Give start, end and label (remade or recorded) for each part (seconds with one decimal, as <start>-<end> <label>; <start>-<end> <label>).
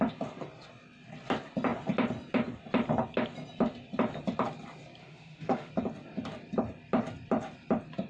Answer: 0.0-5.0 recorded; 5.0-5.7 remade; 5.7-8.1 recorded